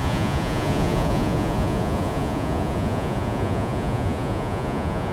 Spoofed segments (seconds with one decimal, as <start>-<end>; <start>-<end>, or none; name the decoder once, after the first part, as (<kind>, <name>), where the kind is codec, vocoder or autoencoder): 0.0-5.1 (vocoder, Vocos)